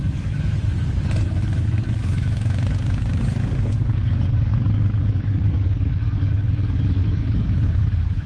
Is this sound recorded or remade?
remade